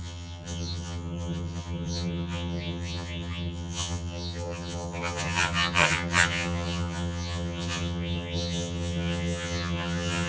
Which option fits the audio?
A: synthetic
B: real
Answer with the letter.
A